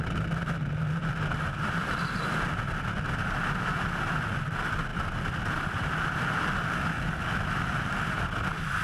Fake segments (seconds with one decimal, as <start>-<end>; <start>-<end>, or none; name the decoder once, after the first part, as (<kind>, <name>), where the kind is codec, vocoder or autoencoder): none